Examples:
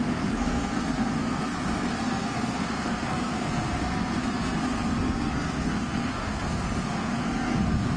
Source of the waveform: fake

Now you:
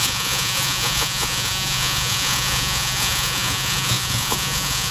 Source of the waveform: fake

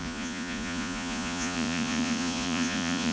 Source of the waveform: fake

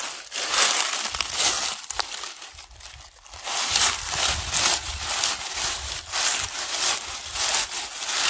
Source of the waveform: real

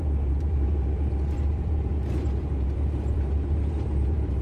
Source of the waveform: fake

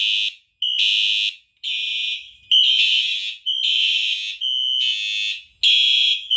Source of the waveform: real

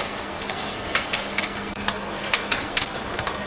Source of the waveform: fake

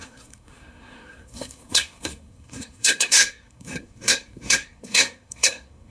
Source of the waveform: fake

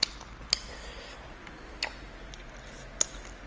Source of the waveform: real